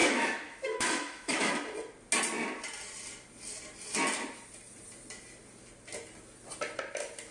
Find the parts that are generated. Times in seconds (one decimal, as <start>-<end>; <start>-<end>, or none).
0.0-1.5